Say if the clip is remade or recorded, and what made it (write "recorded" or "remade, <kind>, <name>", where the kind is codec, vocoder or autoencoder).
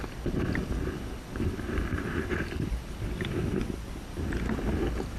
recorded